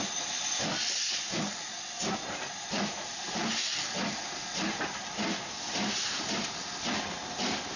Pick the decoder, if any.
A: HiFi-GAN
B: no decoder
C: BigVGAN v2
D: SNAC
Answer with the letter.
B